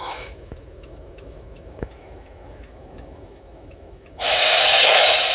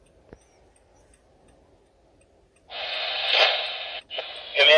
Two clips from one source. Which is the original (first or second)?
second